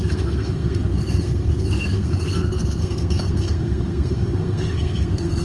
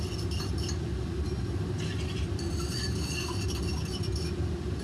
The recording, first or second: second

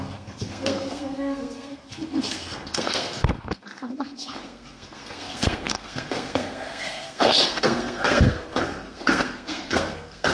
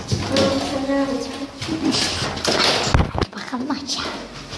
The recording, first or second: second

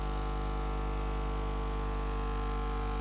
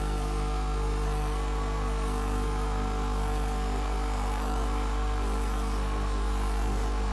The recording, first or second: first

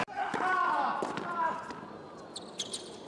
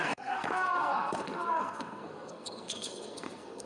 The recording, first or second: first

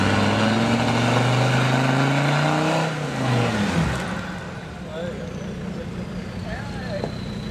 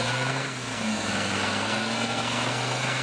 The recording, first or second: first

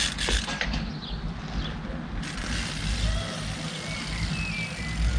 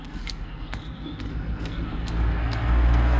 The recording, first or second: first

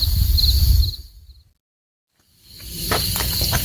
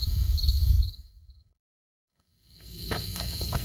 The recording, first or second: first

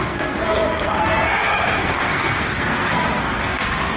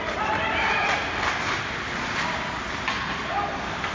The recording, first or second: second